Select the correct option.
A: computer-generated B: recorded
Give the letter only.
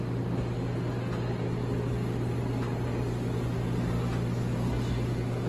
B